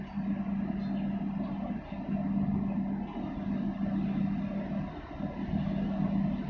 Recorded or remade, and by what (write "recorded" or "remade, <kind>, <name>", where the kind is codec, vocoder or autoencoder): recorded